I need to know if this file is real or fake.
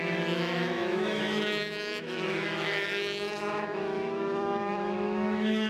fake